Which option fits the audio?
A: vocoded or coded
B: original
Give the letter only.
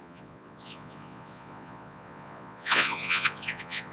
A